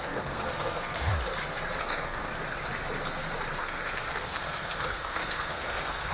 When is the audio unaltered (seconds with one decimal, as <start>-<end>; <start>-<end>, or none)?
1.1-1.8; 2.3-3.6